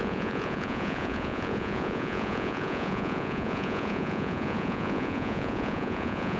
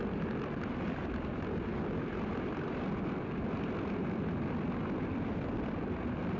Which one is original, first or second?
second